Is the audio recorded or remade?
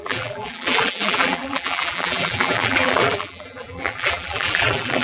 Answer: remade